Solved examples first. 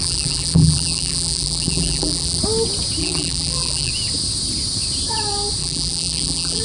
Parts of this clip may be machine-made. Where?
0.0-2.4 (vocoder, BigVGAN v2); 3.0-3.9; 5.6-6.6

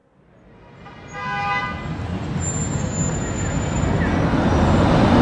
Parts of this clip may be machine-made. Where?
none

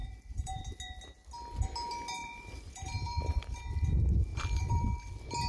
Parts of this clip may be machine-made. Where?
0.0-0.6 (vocoder, BigVGAN v2); 2.2-3.6; 4.3-5.0